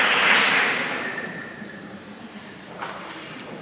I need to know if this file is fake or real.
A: fake